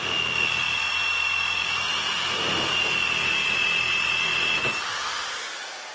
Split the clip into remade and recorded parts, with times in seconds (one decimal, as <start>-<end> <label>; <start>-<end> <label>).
0.0-5.9 recorded

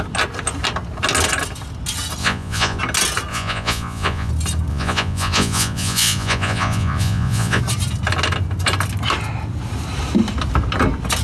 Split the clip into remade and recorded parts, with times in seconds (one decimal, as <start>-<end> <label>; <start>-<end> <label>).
0.0-2.2 recorded; 2.2-2.8 remade; 2.8-3.3 recorded; 3.3-4.3 remade; 4.3-4.7 recorded; 4.7-7.6 remade; 7.6-11.2 recorded

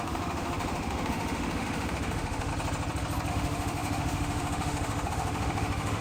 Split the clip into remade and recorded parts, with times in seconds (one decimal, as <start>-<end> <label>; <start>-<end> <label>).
0.0-2.5 remade; 2.5-3.3 recorded; 3.3-6.0 remade